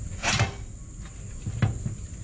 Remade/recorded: recorded